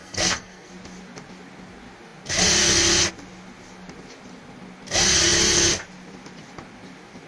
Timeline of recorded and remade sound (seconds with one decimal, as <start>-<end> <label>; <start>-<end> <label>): 0.0-0.7 remade; 0.7-7.3 recorded